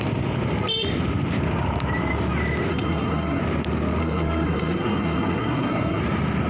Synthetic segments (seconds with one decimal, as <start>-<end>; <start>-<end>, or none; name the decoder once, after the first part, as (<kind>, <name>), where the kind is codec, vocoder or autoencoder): 2.7-3.4 (codec, SNAC); 4.0-6.0